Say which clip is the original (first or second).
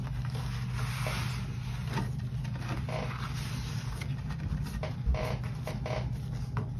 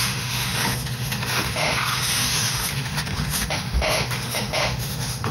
first